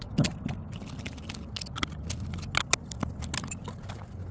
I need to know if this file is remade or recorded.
recorded